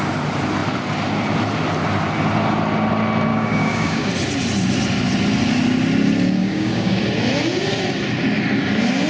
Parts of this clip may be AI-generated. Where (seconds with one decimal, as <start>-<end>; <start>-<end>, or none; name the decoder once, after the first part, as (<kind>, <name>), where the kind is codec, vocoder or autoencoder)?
3.3-4.1 (codec, DAC); 6.4-7.0